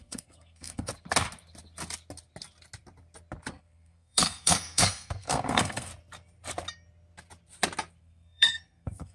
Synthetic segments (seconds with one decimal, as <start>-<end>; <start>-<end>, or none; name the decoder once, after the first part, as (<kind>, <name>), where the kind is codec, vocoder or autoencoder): 0.0-0.9 (codec, SNAC); 3.5-5.9; 8.0-9.1